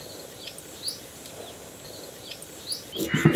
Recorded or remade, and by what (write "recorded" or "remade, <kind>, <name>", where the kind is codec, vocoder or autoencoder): recorded